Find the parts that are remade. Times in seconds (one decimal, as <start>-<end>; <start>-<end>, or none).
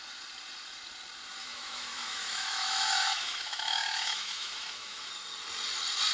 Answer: 1.4-5.1